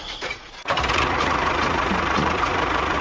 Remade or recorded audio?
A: remade